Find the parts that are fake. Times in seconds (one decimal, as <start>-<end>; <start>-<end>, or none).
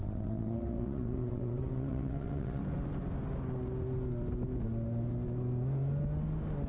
0.0-2.6